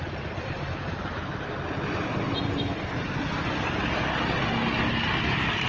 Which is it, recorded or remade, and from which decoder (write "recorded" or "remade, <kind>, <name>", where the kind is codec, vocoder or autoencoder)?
recorded